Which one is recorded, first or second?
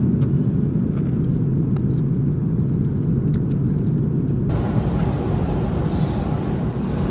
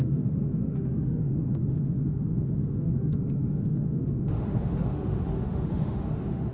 first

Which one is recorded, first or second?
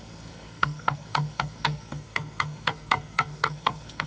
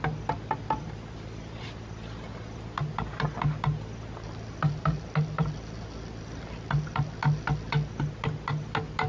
second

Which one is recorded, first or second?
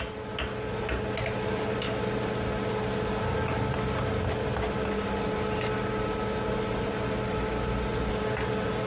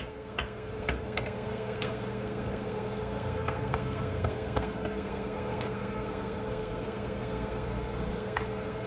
first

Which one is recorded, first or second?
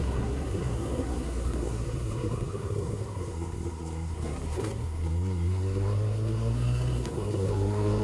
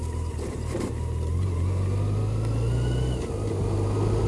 second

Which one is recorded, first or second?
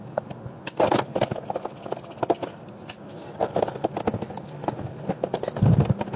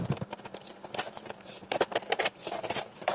first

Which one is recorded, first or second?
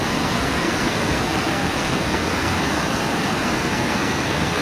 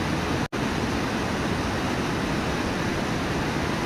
second